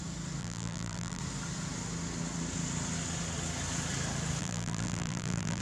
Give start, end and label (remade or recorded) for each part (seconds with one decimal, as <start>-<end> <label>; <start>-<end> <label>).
0.0-0.4 recorded; 0.4-1.2 remade; 1.2-4.4 recorded; 4.4-5.6 remade